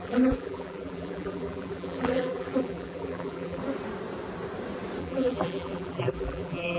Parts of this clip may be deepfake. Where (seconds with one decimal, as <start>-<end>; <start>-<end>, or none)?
0.0-3.6; 5.0-6.8